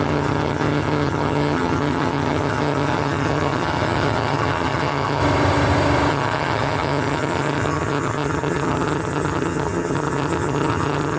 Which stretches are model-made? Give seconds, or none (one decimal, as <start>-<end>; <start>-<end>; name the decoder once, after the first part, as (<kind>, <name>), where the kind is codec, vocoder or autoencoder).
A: 0.0-5.2 (vocoder, HiFi-GAN); 6.1-11.2

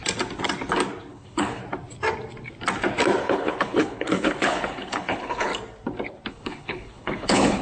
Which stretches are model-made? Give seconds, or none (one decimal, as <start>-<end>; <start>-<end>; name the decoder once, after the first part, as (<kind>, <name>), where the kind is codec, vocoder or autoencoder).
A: 1.1-1.6 (codec, HILCodec); 3.2-5.5; 6.3-7.6

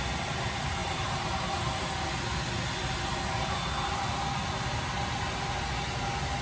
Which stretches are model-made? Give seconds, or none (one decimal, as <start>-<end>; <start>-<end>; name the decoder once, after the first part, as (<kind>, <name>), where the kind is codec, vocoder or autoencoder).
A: 0.8-1.3 (vocoder, BigVGAN v2)

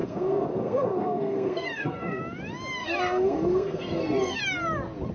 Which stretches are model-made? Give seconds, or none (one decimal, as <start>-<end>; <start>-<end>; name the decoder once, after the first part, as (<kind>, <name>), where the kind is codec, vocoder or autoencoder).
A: 0.0-2.2 (codec, SNAC); 2.8-4.4

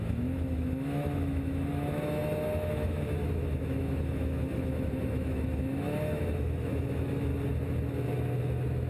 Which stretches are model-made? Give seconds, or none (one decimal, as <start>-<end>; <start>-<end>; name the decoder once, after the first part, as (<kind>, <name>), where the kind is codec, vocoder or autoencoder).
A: 0.0-7.3 (autoencoder, DAC-VAE); 8.4-8.9

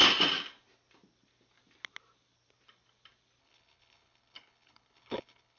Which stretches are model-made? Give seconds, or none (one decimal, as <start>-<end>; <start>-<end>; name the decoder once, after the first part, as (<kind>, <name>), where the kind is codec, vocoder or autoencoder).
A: 3.4-5.6 (codec, HILCodec)

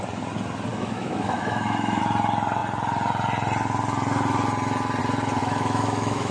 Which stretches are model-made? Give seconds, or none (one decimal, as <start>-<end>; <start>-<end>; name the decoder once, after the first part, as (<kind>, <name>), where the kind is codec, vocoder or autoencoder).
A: 0.7-2.0 (autoencoder, DAC-VAE); 5.4-6.3